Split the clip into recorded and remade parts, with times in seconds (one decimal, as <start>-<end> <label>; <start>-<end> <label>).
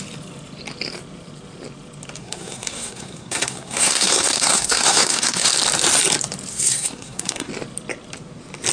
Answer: 0.0-2.2 recorded; 2.2-5.5 remade; 5.5-6.5 recorded; 6.5-7.5 remade; 7.5-8.7 recorded